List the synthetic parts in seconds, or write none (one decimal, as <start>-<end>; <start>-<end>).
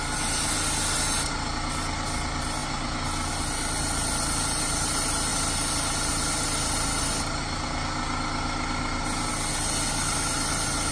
none